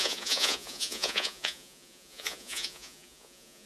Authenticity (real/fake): fake